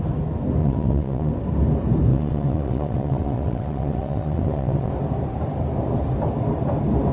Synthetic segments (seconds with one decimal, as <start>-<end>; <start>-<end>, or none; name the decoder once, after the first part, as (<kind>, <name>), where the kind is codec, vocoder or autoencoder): 0.6-1.3 (vocoder, WaveNeXt); 2.1-4.9